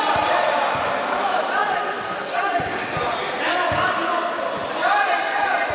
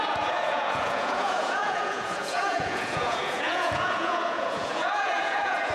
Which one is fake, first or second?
second